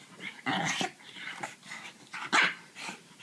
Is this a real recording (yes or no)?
yes